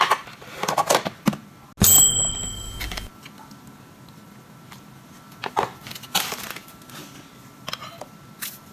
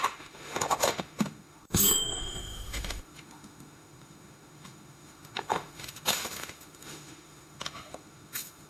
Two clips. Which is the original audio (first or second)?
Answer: first